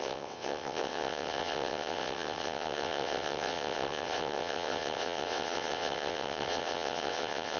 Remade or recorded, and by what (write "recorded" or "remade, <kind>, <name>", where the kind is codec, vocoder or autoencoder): remade, vocoder, WaveNeXt